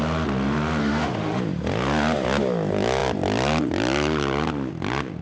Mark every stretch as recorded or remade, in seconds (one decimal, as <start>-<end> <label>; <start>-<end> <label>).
0.0-0.8 recorded; 0.8-1.4 remade; 1.4-5.2 recorded